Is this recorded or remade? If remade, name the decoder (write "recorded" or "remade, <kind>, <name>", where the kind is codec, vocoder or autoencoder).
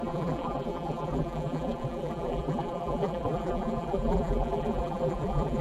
remade, vocoder, BigVGAN v2